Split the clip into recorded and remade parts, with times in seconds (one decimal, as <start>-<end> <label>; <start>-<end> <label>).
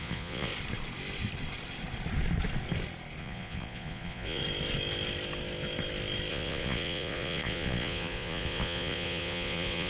0.0-0.5 remade; 0.5-3.2 recorded; 3.2-4.4 remade; 4.4-6.3 recorded; 6.3-9.9 remade